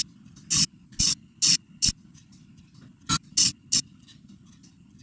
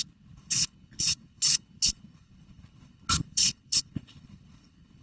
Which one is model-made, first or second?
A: second